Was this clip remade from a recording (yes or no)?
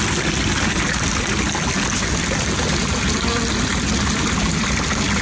no